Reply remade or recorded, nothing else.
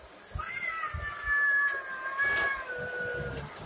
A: recorded